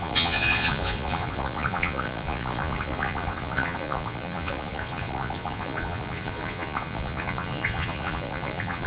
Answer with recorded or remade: remade